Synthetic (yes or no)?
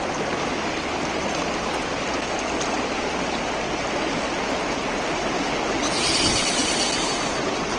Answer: no